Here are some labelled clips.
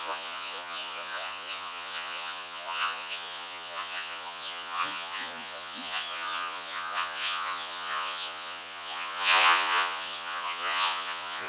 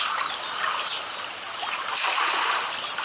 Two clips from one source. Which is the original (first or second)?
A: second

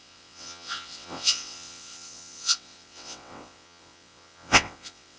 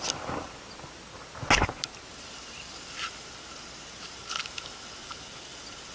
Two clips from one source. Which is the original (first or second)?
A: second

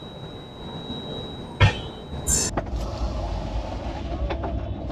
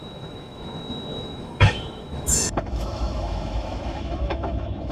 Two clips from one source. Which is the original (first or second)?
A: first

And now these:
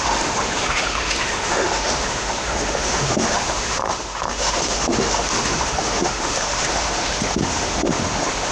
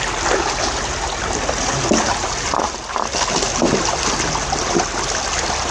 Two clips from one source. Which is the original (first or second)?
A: second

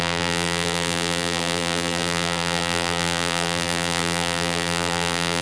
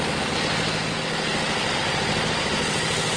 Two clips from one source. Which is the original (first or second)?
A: second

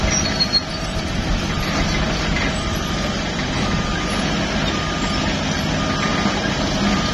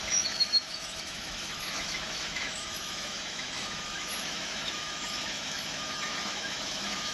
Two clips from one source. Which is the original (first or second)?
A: first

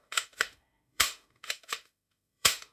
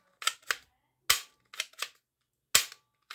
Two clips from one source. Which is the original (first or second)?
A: second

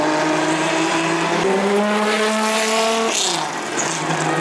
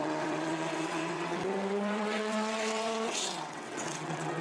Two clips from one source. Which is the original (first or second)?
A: first